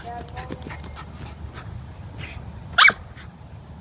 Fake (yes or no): no